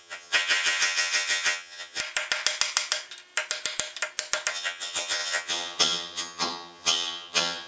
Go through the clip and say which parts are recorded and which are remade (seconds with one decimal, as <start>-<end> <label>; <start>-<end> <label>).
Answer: 0.0-2.0 remade; 2.0-4.5 recorded; 4.5-7.7 remade